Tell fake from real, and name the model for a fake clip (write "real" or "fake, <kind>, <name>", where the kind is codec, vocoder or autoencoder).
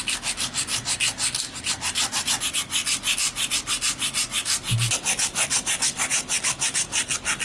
real